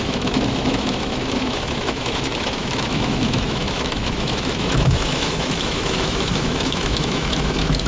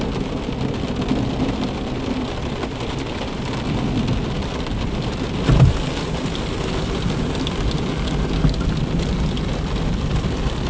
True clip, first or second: second